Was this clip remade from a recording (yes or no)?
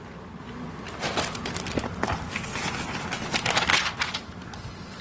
no